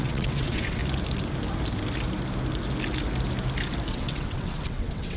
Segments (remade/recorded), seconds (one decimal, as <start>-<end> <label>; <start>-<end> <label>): 0.0-0.8 remade; 0.8-3.9 recorded; 3.9-5.2 remade